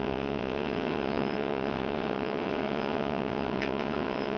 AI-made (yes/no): yes